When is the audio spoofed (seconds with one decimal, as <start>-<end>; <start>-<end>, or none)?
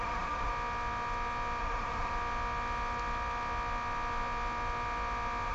0.0-0.5; 1.6-2.1